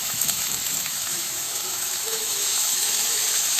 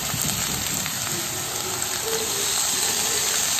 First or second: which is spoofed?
first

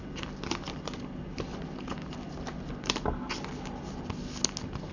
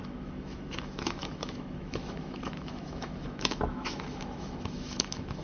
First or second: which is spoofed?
second